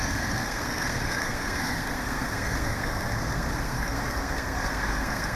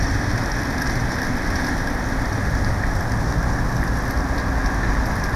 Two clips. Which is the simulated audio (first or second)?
first